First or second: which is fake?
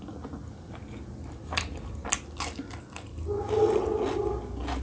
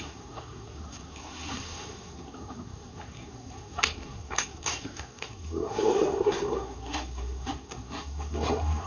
second